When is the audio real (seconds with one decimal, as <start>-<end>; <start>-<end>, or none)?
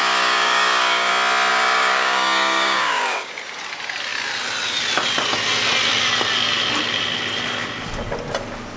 1.1-1.5; 3.3-8.8